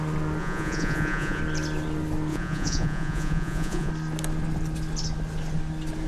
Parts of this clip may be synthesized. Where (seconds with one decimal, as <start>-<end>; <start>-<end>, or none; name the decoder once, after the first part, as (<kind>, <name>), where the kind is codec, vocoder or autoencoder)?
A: 0.4-1.4 (vocoder, Vocos); 2.3-3.9